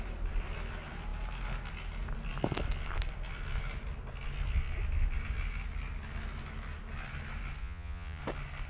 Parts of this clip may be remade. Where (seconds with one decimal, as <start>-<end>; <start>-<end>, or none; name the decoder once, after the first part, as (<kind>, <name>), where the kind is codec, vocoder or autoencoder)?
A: 7.6-8.2 (vocoder, Vocos)